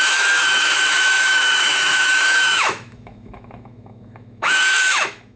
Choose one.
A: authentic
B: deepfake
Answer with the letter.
B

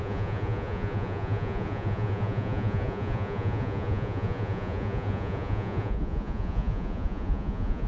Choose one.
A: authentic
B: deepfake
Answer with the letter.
B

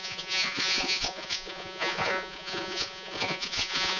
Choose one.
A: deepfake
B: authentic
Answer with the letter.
A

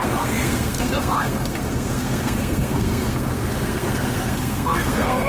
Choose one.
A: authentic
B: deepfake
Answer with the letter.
B